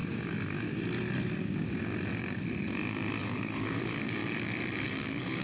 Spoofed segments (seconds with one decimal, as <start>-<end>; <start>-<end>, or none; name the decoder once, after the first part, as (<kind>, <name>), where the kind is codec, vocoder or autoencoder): 3.2-4.2 (codec, DAC); 4.8-5.4